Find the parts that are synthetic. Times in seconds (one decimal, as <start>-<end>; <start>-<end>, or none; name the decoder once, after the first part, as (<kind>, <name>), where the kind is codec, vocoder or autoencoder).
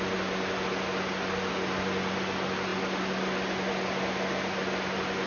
none